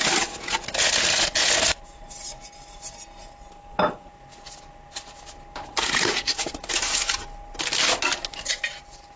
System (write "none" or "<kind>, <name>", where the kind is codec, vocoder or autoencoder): none